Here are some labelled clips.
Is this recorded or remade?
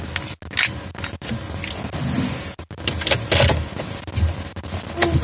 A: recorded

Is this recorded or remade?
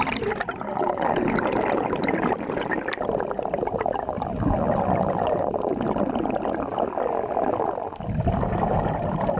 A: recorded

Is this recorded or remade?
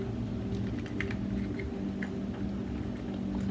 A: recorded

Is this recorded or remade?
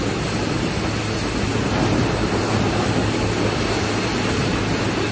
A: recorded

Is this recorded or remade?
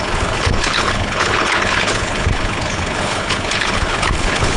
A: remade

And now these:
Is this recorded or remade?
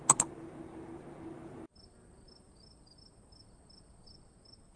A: recorded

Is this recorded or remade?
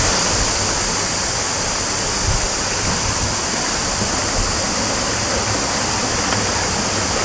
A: recorded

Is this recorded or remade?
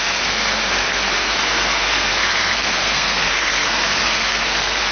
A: remade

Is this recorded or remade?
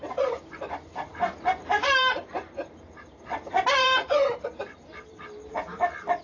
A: remade